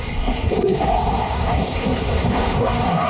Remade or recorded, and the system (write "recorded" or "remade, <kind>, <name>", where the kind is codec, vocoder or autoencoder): remade, codec, SNAC